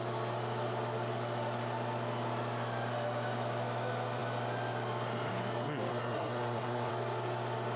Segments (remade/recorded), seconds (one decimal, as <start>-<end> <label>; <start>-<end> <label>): 0.0-5.9 recorded; 5.9-6.9 remade; 6.9-7.8 recorded